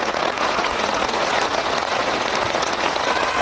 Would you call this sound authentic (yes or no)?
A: no